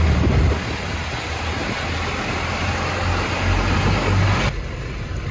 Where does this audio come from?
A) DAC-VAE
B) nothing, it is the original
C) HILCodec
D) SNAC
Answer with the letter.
B